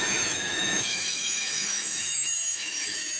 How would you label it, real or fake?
fake